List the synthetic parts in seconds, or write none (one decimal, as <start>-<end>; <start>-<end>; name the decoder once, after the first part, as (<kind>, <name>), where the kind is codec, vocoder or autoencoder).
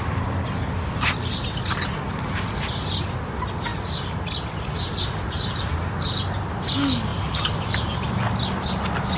7.1-7.9 (vocoder, BigVGAN v2)